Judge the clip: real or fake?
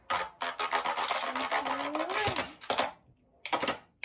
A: real